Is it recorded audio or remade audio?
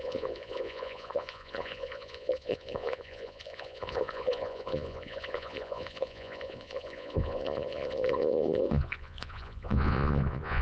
remade